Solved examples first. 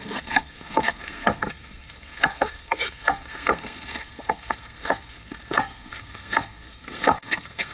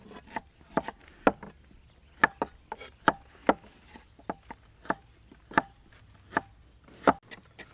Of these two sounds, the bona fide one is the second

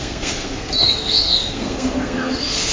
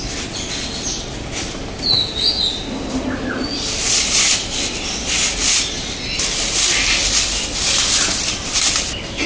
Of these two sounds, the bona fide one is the second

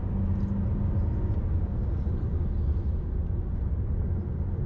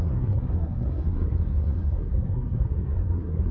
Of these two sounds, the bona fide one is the first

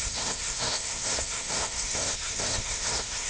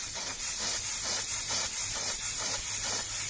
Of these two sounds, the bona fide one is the second